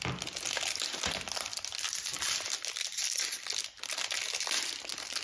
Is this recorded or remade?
recorded